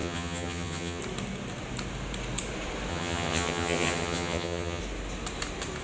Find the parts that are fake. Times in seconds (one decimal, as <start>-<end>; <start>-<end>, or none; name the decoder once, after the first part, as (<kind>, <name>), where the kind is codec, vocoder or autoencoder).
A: 0.0-1.0 (vocoder, HiFi-GAN); 2.9-4.8